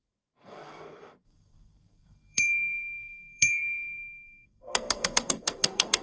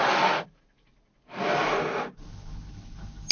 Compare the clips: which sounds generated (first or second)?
first